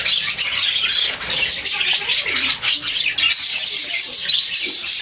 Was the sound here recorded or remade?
remade